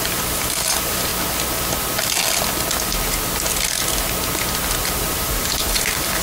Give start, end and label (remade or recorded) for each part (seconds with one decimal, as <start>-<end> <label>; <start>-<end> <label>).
0.0-1.1 remade; 1.1-4.8 recorded; 4.8-6.2 remade